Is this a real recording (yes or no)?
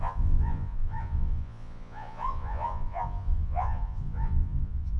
no